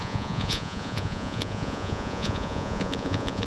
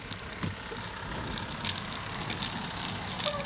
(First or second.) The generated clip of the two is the first